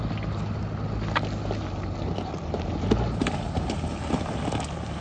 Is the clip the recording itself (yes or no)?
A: yes